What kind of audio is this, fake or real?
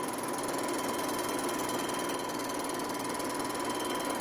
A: real